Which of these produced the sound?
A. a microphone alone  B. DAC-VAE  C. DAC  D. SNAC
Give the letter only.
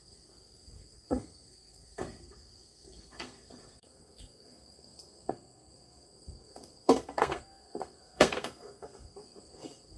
D